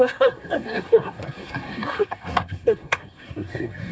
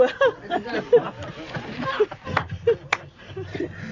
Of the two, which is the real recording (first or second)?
second